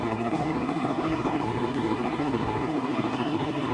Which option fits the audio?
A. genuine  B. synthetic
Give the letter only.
B